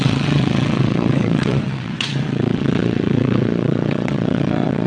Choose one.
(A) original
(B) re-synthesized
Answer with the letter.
B